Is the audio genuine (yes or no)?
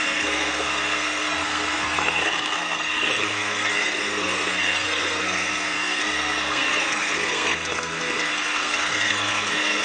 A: no